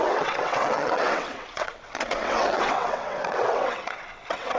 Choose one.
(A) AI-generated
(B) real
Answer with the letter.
A